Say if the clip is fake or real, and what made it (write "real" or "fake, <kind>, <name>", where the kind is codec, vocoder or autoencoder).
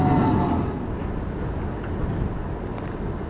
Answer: real